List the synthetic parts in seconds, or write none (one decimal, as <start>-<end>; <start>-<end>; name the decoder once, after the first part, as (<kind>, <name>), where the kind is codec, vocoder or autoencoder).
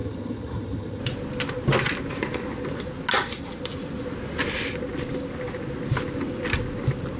0.0-1.0 (vocoder, HiFi-GAN)